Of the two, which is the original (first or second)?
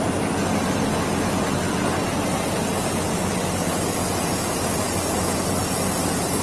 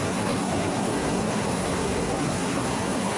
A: first